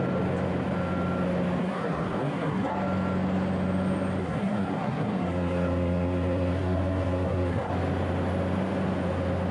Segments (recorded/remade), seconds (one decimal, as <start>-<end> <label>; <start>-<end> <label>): 0.0-1.6 recorded; 1.6-2.7 remade; 2.7-4.2 recorded; 4.2-7.7 remade; 7.7-9.5 recorded